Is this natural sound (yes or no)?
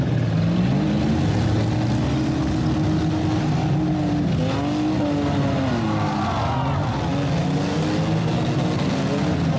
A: yes